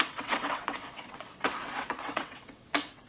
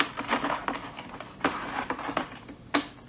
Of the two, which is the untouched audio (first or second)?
second